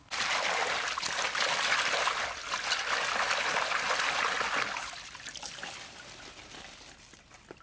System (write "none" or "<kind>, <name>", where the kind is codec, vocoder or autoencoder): none